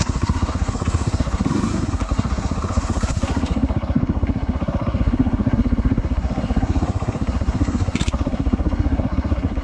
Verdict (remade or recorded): remade